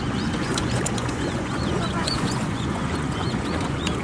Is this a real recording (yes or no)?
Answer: no